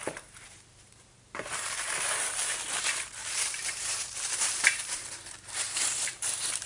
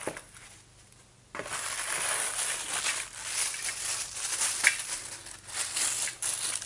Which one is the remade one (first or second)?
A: first